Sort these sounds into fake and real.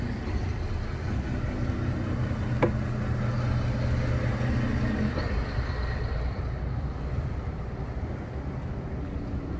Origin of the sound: real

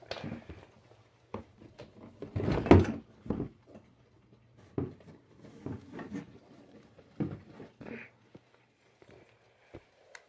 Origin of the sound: real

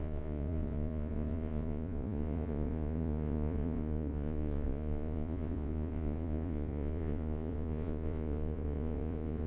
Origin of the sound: fake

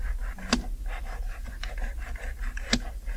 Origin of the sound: real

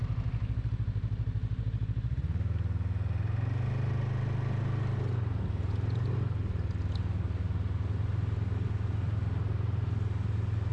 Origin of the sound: real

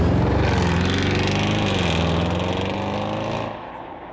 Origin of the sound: real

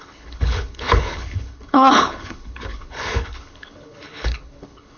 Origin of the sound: fake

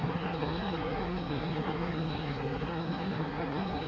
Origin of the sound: fake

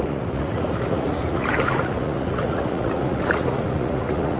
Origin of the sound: fake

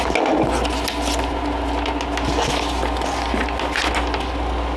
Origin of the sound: real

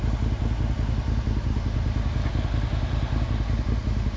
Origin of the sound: real